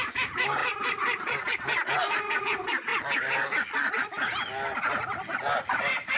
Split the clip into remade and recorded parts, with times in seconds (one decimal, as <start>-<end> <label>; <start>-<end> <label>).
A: 0.0-6.2 recorded